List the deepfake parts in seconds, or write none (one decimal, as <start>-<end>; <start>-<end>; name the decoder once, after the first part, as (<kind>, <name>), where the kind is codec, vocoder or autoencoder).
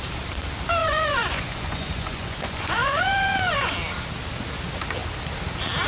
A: 0.8-3.7 (vocoder, Vocos)